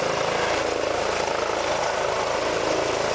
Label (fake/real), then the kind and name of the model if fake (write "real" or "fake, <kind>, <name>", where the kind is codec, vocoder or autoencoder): real